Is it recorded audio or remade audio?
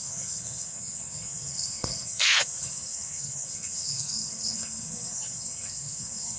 remade